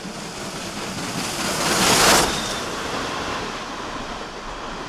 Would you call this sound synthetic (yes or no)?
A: no